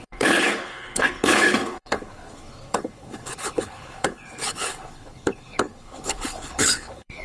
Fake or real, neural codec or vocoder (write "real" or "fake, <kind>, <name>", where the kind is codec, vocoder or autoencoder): fake, codec, HILCodec